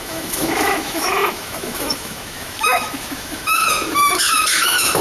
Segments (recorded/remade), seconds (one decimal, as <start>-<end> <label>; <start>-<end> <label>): 0.0-5.0 remade